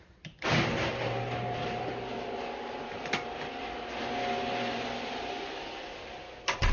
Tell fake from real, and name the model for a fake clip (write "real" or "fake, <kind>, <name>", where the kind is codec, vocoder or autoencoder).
real